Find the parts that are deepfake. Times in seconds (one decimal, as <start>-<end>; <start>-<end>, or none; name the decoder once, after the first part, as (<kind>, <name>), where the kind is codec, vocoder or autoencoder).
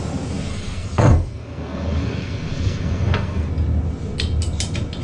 0.5-3.5 (codec, SNAC)